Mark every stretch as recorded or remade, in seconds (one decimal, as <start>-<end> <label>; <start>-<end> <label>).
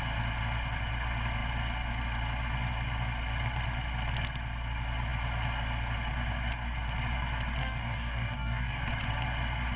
0.0-7.6 recorded; 7.6-8.8 remade; 8.8-9.8 recorded